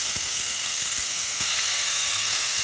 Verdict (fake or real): fake